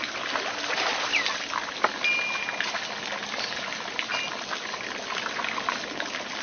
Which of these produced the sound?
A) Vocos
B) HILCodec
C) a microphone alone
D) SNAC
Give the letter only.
C